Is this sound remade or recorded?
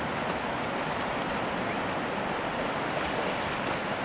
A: recorded